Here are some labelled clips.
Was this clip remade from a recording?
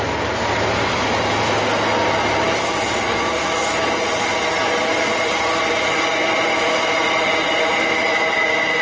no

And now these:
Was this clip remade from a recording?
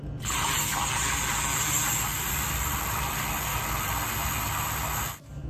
no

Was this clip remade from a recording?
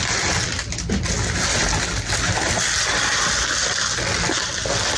no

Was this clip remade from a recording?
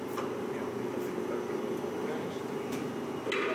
no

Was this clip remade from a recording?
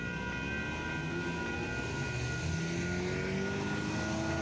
no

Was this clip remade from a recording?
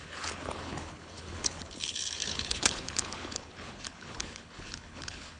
yes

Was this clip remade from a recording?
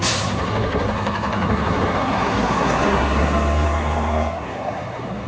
yes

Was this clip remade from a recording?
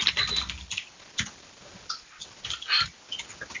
yes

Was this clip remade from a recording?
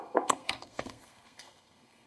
yes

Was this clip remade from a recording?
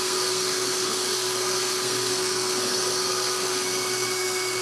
yes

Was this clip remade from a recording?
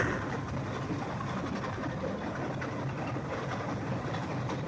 no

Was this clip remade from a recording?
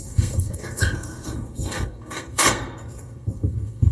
yes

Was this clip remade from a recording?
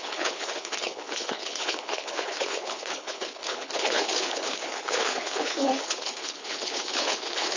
yes